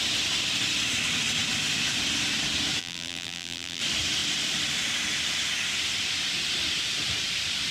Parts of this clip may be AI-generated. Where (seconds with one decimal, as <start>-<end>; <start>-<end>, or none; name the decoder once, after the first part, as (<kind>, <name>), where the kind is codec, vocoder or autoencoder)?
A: 2.8-3.8 (vocoder, BigVGAN v2)